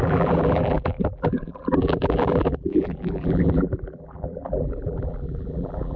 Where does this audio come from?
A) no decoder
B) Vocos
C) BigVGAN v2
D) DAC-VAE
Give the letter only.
C